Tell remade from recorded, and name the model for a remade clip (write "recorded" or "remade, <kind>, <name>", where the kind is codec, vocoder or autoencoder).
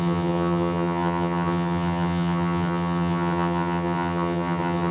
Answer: remade, vocoder, HiFi-GAN